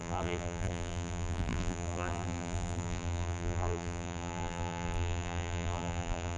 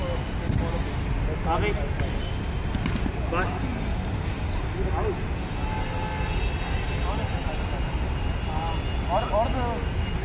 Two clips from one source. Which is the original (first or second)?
second